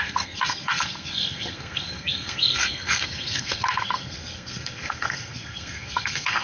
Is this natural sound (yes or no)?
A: no